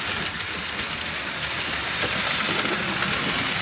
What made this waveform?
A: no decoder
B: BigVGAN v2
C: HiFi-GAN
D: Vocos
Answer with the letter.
A